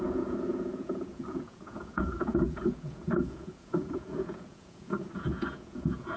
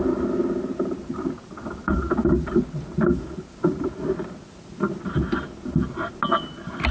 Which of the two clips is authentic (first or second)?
second